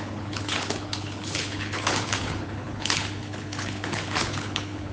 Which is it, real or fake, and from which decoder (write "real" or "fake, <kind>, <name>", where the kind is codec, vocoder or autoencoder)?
fake, codec, HILCodec